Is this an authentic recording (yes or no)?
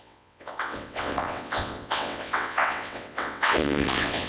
no